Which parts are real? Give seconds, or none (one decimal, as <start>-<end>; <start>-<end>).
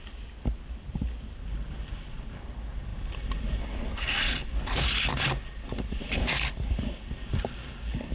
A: 0.0-8.1